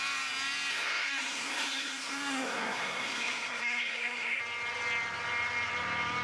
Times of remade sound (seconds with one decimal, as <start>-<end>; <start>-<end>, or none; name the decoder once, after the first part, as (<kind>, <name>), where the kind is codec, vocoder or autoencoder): 0.7-4.4 (codec, SNAC)